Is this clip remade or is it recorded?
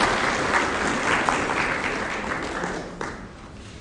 recorded